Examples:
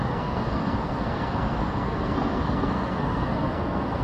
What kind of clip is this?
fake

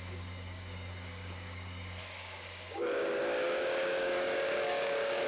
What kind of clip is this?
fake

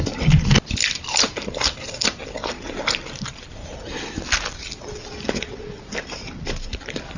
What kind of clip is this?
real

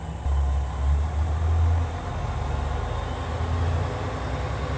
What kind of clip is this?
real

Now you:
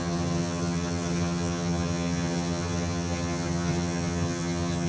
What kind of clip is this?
fake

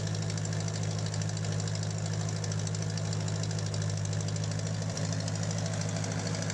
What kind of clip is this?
real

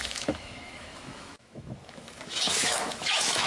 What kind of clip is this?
fake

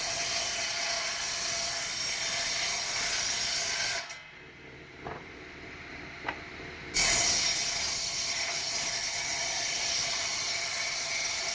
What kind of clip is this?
real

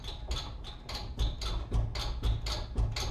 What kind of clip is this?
real